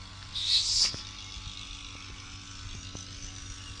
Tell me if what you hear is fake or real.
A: real